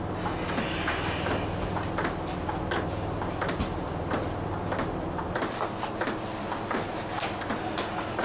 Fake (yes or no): no